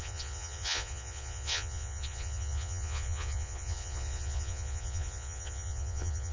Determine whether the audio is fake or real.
fake